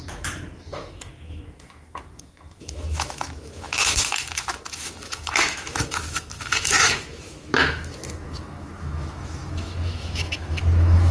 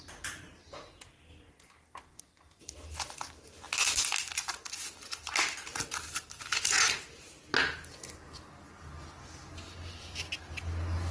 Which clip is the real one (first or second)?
second